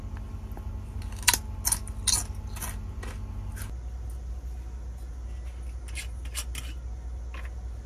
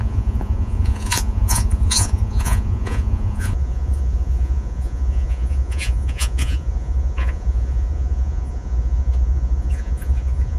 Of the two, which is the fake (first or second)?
second